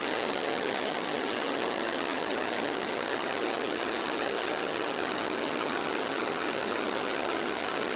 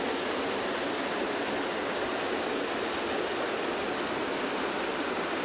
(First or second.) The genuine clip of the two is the second